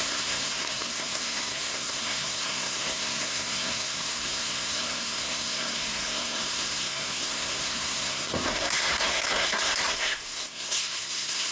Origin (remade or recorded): remade